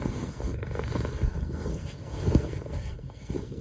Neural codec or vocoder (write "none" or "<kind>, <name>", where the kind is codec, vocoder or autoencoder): codec, SNAC